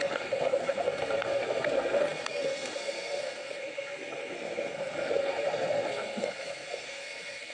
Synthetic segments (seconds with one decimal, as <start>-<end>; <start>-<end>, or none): 0.0-7.5